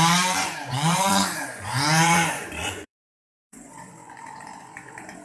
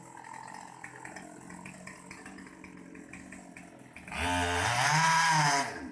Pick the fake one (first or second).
first